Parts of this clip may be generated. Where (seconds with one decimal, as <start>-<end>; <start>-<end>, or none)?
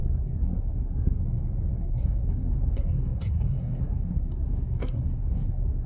0.0-1.2; 1.8-5.9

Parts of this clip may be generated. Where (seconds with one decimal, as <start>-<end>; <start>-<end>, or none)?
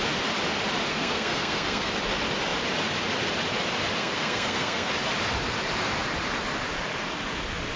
0.9-1.9; 4.0-4.9